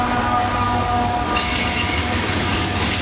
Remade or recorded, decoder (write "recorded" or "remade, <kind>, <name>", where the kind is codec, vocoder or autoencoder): remade, codec, DAC